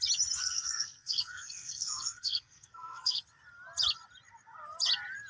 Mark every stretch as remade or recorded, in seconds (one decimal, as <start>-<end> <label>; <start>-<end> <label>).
0.0-0.4 recorded; 0.4-3.2 remade; 3.2-5.3 recorded